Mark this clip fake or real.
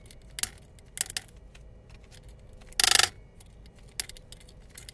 real